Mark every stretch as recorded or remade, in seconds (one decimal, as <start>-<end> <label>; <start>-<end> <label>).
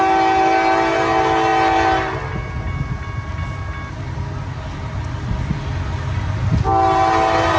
0.0-7.6 recorded